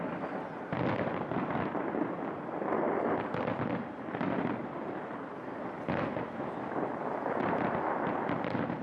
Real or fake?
real